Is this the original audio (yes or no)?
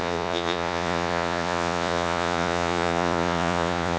no